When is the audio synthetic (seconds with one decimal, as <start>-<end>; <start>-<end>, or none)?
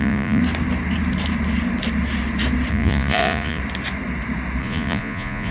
0.0-0.4; 2.7-3.6; 4.6-5.5